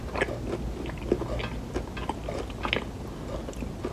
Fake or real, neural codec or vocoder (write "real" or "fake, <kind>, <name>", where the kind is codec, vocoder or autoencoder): real